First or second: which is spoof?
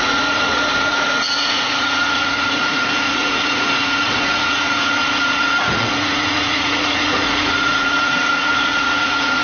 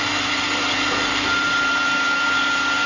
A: first